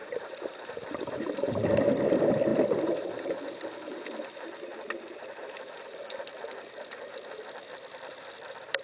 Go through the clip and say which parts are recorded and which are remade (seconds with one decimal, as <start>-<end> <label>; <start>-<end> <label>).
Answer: 0.0-1.7 remade; 1.7-8.8 recorded